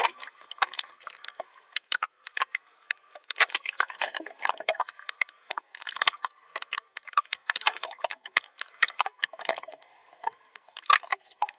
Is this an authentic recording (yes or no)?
no